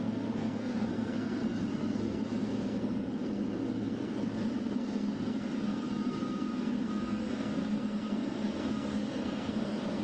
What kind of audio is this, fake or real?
fake